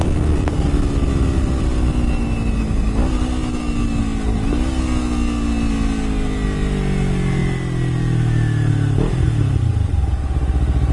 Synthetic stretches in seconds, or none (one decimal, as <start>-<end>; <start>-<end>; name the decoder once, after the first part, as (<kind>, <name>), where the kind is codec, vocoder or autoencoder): 9.9-10.5 (vocoder, Vocos)